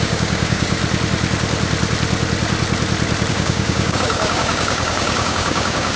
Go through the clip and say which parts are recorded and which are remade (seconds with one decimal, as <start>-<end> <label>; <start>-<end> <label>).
0.0-0.8 remade; 0.8-3.3 recorded; 3.3-6.0 remade